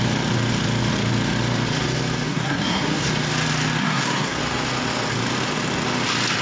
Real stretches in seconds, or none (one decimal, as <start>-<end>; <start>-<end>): 0.0-2.3; 3.1-3.8; 4.4-6.4